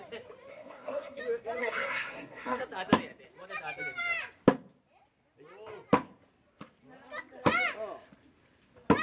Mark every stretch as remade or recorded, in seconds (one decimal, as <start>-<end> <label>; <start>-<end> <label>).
0.0-0.5 recorded; 0.5-1.2 remade; 1.2-1.6 recorded; 1.6-2.6 remade; 2.6-9.0 recorded